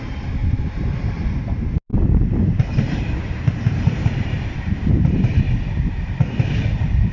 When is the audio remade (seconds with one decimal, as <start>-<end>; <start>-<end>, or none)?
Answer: 0.4-1.0; 1.9-5.4